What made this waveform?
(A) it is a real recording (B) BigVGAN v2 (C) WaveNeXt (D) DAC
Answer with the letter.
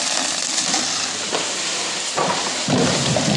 B